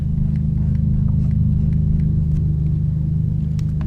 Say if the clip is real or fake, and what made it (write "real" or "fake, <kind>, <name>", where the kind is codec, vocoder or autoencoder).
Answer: real